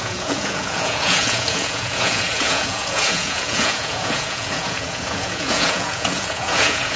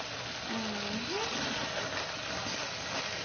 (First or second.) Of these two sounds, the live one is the second